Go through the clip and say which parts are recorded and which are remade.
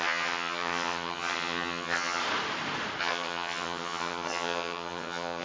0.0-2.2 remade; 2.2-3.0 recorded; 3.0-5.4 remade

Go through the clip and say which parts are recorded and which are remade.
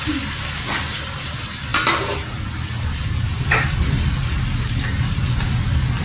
0.0-6.0 recorded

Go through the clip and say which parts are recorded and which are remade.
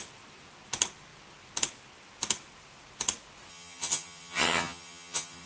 0.0-3.5 recorded; 3.5-5.5 remade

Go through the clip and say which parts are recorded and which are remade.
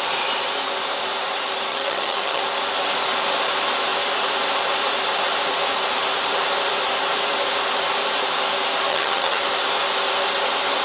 0.0-1.7 recorded; 1.7-2.4 remade; 2.4-8.9 recorded; 8.9-9.4 remade; 9.4-10.8 recorded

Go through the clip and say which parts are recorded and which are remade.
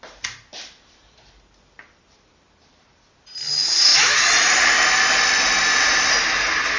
0.0-6.8 recorded